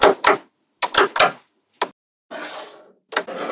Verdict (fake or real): real